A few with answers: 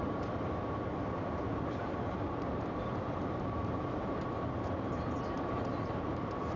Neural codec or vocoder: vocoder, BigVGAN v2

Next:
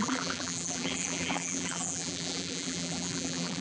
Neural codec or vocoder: vocoder, BigVGAN v2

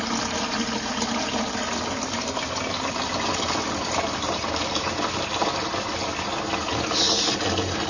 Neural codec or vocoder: none